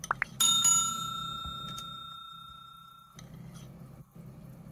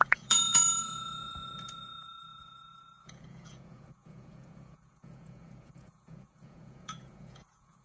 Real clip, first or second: first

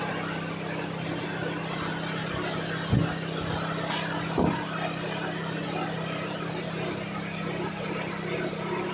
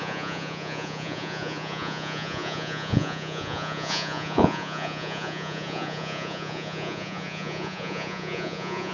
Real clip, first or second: first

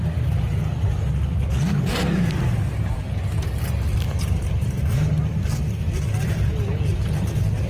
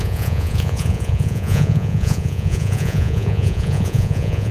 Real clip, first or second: first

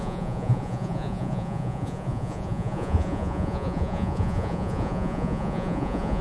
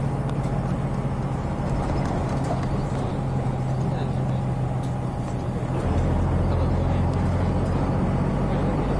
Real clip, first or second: second